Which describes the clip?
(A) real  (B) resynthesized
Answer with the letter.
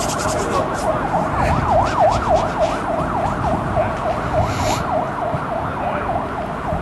A